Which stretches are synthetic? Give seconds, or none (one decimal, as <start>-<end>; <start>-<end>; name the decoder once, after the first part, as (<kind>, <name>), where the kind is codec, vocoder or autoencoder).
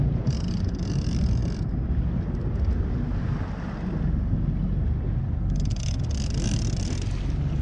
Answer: none